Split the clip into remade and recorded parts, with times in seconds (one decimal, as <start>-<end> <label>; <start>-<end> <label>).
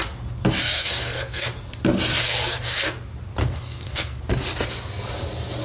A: 0.0-0.6 recorded; 0.6-1.5 remade; 1.5-2.2 recorded; 2.2-2.9 remade; 2.9-3.4 recorded; 3.4-4.2 remade; 4.2-5.6 recorded